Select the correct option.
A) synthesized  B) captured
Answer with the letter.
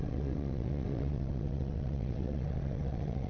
A